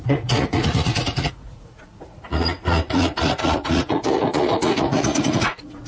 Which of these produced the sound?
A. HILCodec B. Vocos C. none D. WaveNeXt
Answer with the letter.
B